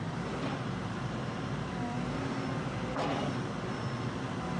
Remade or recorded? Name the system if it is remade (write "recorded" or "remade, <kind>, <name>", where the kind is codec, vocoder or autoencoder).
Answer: recorded